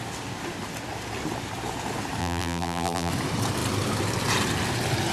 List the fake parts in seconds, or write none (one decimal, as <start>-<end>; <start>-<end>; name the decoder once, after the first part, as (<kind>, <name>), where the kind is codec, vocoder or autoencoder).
2.2-3.1 (vocoder, BigVGAN v2)